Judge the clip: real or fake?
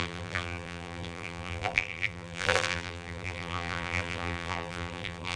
fake